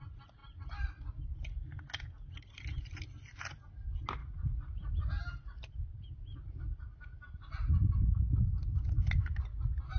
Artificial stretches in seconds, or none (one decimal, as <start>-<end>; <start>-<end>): none